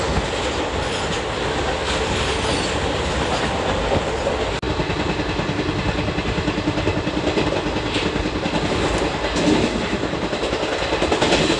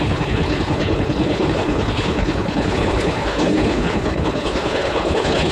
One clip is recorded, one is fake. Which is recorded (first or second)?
first